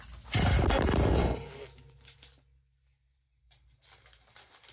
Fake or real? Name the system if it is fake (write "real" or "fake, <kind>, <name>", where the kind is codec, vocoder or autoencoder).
real